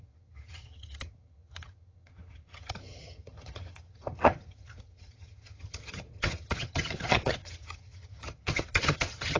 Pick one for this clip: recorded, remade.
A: remade